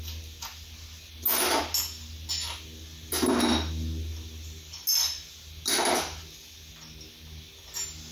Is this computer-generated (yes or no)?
no